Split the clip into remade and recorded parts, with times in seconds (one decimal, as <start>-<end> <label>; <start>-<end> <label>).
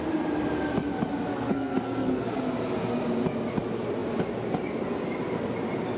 0.0-1.3 recorded; 1.3-2.4 remade; 2.4-6.0 recorded